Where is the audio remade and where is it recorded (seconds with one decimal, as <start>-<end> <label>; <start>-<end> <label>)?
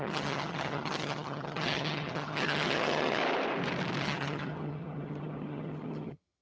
0.0-3.2 remade; 3.2-4.0 recorded; 4.0-6.4 remade